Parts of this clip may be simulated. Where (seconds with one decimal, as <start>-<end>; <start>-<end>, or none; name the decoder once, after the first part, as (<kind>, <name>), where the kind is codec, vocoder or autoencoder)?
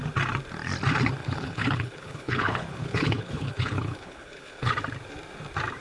1.2-4.7 (codec, HILCodec)